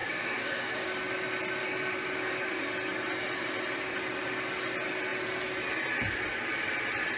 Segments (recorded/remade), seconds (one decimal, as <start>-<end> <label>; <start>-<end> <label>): 0.0-0.9 remade; 0.9-1.6 recorded; 1.6-2.6 remade; 2.6-7.2 recorded